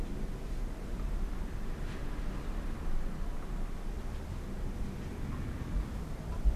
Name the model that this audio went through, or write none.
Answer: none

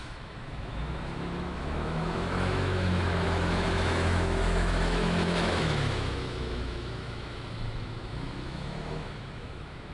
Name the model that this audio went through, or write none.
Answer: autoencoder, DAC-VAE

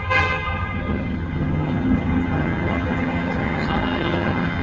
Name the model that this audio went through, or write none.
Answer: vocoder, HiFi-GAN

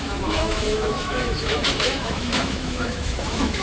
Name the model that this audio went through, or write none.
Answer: autoencoder, DAC-VAE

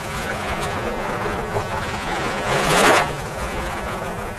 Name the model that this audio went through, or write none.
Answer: vocoder, Vocos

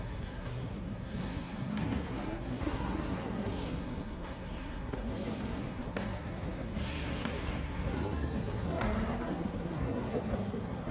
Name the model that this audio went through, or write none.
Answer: codec, SNAC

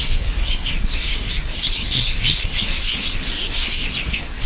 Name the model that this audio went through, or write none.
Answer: codec, SNAC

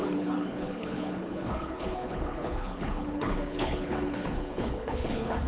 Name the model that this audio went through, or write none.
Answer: codec, HILCodec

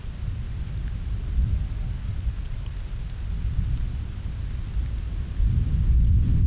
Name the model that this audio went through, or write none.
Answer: none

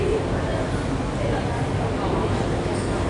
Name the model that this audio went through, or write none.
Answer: none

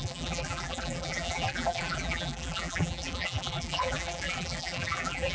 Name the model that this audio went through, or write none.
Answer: vocoder, BigVGAN v2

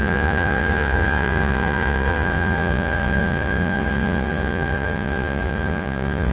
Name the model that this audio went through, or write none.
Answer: vocoder, Vocos